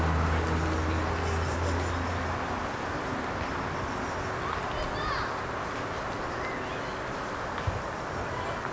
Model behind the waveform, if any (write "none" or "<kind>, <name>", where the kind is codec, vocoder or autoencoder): none